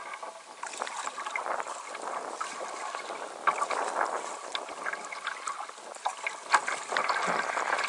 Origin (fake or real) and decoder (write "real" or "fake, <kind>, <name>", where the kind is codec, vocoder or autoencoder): real